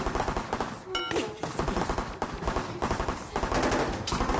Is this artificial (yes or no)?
no